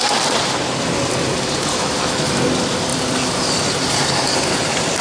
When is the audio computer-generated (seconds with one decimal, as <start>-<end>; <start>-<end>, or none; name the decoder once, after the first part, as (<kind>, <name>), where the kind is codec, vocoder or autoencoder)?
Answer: 1.7-2.3 (autoencoder, DAC-VAE)